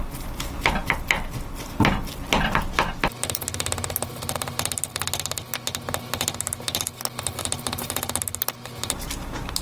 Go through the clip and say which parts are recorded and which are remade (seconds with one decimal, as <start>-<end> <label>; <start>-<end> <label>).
0.0-9.6 recorded